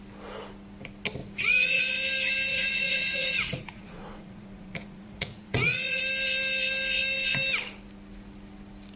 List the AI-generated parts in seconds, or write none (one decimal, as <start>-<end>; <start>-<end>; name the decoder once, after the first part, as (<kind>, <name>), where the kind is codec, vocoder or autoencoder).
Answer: 1.2-1.8 (vocoder, Vocos); 2.5-6.0